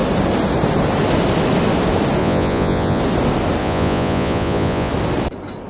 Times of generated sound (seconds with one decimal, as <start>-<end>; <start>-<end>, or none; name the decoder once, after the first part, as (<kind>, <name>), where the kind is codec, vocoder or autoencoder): 2.2-3.0 (vocoder, Vocos); 3.6-4.9